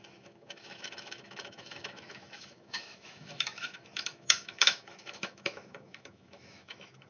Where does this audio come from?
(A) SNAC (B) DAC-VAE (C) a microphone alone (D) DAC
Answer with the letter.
B